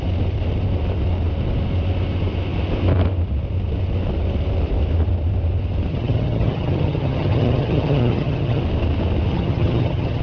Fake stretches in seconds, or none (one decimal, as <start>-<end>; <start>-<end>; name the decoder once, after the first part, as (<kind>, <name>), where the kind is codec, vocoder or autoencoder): 5.9-8.6 (vocoder, HiFi-GAN); 9.3-10.2